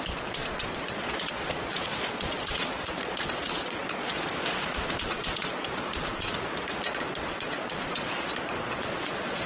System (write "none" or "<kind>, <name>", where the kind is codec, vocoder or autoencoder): vocoder, Vocos